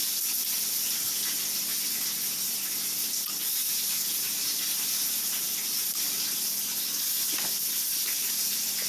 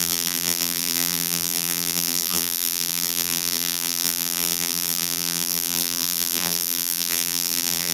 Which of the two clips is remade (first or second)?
second